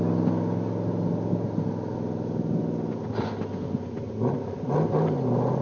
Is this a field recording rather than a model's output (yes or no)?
yes